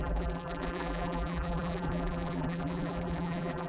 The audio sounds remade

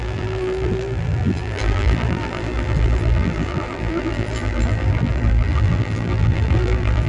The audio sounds remade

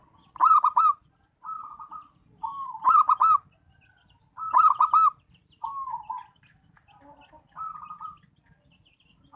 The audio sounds recorded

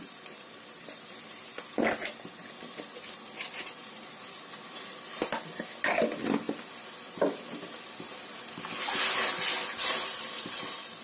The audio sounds remade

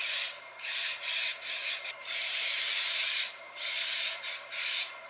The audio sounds remade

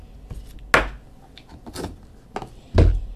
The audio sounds recorded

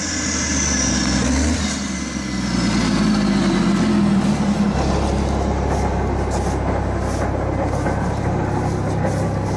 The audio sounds recorded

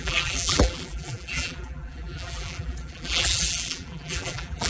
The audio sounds remade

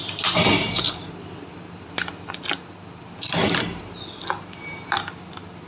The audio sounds recorded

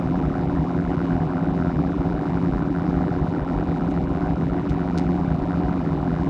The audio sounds remade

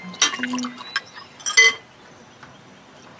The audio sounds recorded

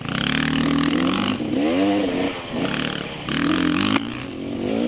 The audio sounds recorded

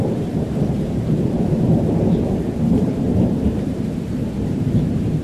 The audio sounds remade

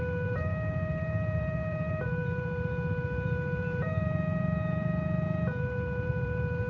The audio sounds remade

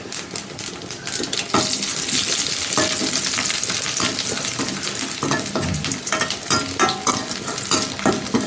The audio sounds recorded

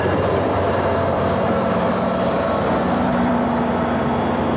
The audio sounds remade